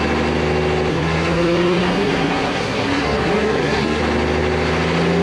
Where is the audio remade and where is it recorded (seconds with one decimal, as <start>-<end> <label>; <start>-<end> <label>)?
0.0-0.9 recorded; 0.9-4.0 remade; 4.0-5.2 recorded